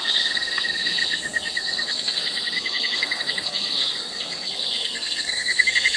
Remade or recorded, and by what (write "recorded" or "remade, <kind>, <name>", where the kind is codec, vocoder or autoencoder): remade, codec, SNAC